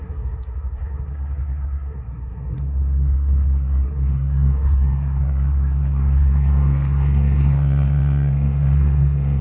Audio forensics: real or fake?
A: fake